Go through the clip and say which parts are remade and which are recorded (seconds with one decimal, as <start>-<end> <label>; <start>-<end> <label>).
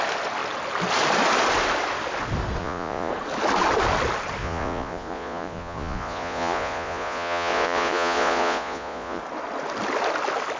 0.0-2.6 recorded; 2.6-3.1 remade; 3.1-4.4 recorded; 4.4-9.2 remade; 9.2-10.6 recorded